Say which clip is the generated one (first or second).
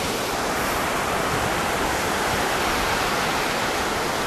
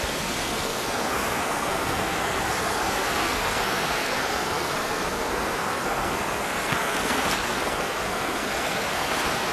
second